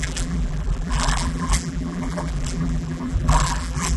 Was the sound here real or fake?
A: fake